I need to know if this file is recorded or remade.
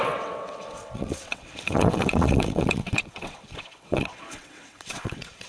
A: remade